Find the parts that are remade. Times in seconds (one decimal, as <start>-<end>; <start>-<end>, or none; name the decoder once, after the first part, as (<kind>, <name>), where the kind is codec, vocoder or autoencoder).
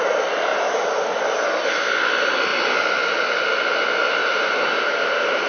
0.5-1.1 (vocoder, BigVGAN v2); 4.2-5.5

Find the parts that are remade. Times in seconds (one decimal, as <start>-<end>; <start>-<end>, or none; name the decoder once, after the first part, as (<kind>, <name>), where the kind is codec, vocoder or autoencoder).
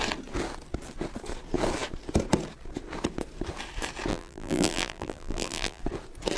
4.1-5.8 (vocoder, BigVGAN v2)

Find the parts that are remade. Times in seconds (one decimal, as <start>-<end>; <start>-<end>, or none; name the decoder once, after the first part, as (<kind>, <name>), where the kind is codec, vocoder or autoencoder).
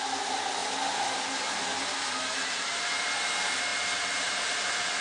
0.0-0.6 (vocoder, BigVGAN v2); 3.2-5.0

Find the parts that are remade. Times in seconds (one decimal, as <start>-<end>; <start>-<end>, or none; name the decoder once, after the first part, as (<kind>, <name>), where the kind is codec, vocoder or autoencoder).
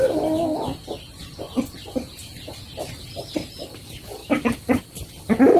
none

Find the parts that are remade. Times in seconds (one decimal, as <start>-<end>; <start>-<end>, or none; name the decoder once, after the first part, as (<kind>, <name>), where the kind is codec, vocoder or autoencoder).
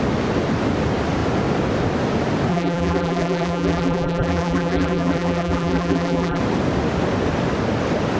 2.5-6.4 (vocoder, BigVGAN v2)